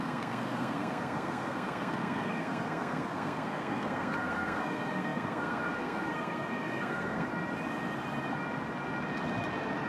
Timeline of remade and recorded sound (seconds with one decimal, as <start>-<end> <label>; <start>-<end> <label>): 0.0-7.3 remade; 7.3-9.9 recorded